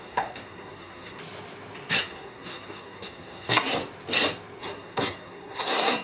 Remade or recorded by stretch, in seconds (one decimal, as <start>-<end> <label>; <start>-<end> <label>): 0.0-1.2 remade; 1.2-1.9 recorded; 1.9-3.8 remade; 3.8-4.6 recorded; 4.6-6.0 remade